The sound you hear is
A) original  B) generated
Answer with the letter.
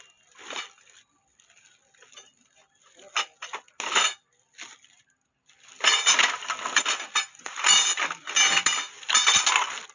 A